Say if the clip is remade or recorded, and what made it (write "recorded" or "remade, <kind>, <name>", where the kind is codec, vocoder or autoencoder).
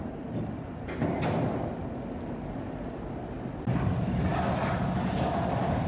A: recorded